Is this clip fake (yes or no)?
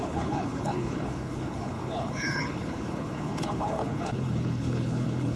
yes